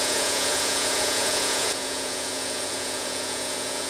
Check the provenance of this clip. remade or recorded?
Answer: remade